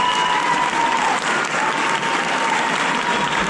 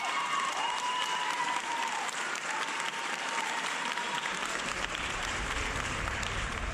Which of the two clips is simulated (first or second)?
second